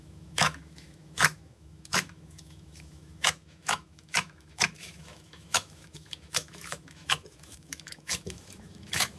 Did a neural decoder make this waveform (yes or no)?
yes